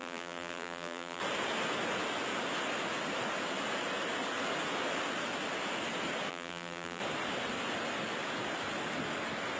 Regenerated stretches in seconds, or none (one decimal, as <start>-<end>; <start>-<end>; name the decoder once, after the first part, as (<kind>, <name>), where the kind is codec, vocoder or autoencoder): 0.0-1.2 (vocoder, BigVGAN v2); 6.3-7.0